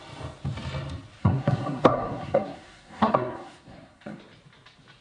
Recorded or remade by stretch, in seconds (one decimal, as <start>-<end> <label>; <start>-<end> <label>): 0.0-1.2 recorded; 1.2-4.2 remade; 4.2-5.0 recorded